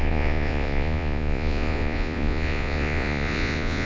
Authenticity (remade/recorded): remade